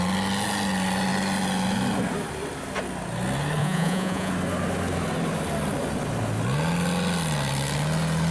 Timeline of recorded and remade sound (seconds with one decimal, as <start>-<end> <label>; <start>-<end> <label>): 0.0-3.6 recorded; 3.6-4.3 remade; 4.3-8.3 recorded